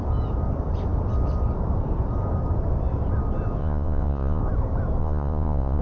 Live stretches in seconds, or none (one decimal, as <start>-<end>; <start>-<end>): 0.0-3.6; 4.4-5.0